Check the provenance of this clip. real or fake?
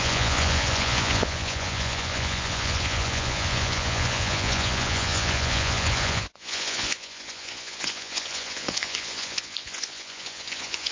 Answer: fake